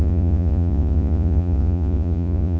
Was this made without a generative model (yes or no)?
no